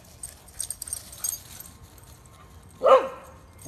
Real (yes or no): yes